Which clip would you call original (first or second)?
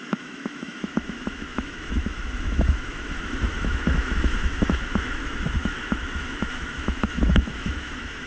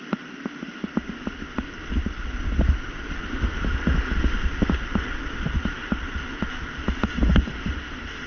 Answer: second